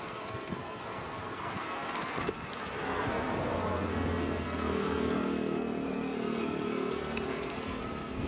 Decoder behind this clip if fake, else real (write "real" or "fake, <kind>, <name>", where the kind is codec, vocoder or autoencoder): fake, codec, SNAC